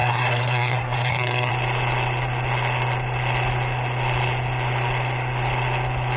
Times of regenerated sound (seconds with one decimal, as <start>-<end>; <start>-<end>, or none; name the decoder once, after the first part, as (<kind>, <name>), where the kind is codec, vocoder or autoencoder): 0.0-1.5 (codec, SNAC)